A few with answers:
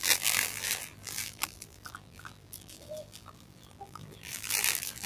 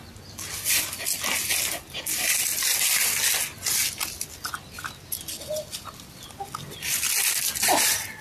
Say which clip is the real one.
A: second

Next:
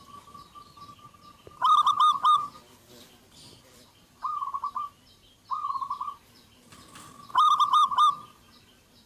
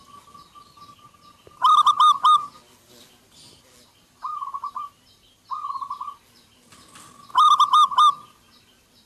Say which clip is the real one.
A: second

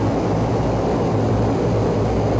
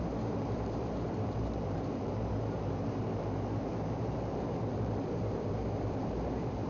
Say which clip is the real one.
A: first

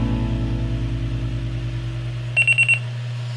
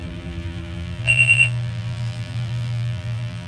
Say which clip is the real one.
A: first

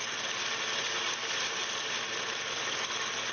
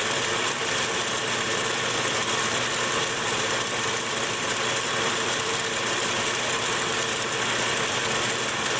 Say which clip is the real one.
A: first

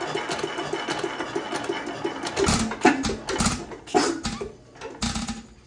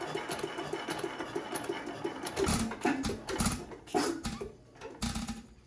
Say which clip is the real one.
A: first